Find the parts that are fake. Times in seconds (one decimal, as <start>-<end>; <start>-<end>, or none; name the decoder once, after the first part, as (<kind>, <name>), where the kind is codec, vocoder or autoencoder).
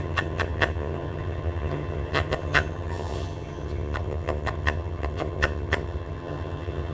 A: 0.0-6.9 (vocoder, HiFi-GAN)